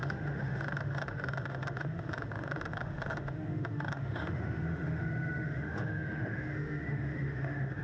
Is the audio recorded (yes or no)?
no